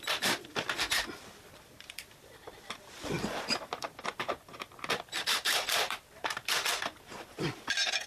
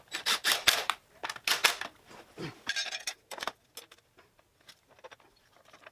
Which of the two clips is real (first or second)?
second